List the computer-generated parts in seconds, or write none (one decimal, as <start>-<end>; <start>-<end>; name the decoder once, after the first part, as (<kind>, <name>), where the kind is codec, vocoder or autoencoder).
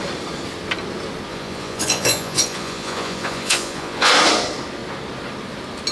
1.3-4.1 (vocoder, Vocos)